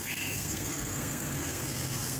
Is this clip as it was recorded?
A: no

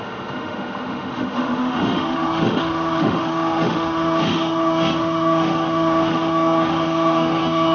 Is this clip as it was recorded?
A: no